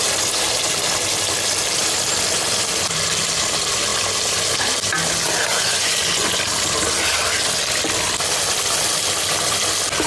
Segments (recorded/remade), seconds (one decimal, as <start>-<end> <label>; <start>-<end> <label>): 0.0-5.5 recorded; 5.5-6.4 remade; 6.4-10.1 recorded